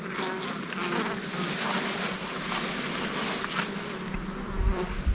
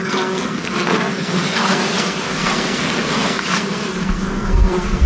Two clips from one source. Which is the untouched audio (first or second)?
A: first